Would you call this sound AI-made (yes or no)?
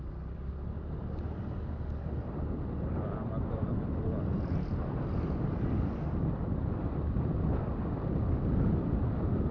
no